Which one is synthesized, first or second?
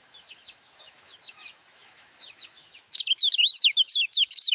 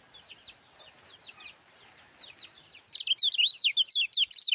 first